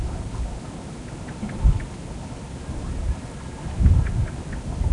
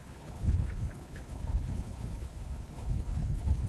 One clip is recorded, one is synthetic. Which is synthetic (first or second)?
second